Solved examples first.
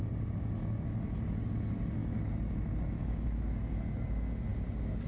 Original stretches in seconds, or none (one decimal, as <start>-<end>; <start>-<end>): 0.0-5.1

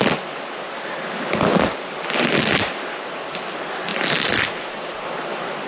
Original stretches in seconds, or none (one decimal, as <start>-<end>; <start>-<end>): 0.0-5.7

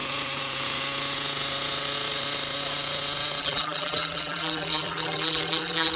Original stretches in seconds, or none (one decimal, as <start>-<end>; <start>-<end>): 0.0-3.4